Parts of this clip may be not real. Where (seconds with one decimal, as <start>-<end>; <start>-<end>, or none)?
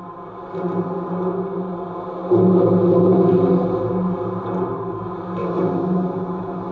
5.4-6.7